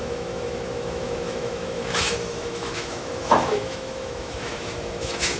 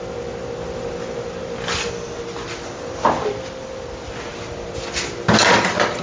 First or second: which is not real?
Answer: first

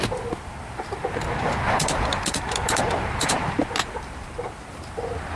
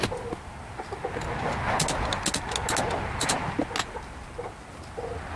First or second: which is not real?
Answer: first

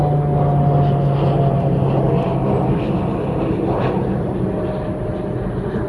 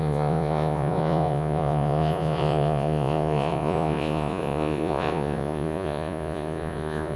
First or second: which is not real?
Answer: second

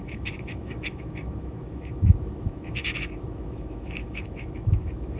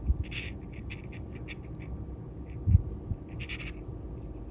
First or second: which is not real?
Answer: first